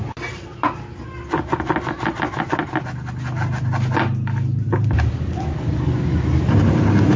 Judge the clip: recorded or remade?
recorded